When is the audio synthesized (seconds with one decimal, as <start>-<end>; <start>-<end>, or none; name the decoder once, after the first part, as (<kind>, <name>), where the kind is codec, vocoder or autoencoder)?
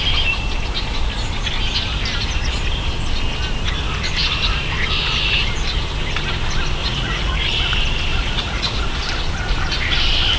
6.8-7.3 (vocoder, Vocos); 8.1-8.8